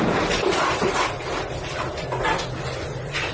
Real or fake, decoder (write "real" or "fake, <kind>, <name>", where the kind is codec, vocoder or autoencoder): real